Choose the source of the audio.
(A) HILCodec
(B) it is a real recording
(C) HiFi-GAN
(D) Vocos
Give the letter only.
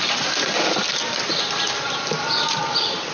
B